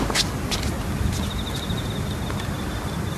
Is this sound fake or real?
real